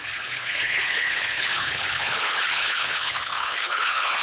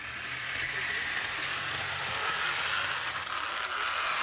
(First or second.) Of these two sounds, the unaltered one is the second